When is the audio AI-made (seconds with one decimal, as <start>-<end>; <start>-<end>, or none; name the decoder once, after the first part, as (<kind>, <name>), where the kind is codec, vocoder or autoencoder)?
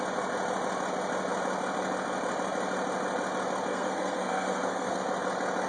3.7-5.0 (codec, SNAC)